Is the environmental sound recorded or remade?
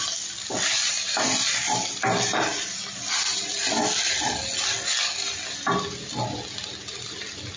recorded